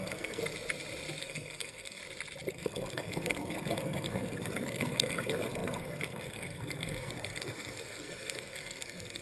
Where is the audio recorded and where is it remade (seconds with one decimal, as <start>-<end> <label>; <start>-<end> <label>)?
0.0-0.4 remade; 0.4-1.2 recorded; 1.2-2.0 remade; 2.0-2.5 recorded; 2.5-9.2 remade